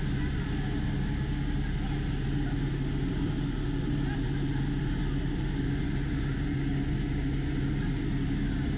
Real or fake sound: real